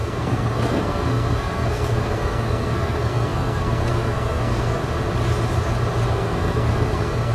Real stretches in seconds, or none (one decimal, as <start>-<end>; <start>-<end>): 4.8-6.1